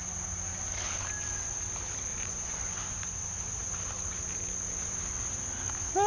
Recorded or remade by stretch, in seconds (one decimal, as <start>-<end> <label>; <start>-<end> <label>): 0.0-2.1 recorded; 2.1-2.8 remade; 2.8-6.1 recorded